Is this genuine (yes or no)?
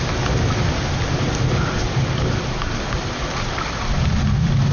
yes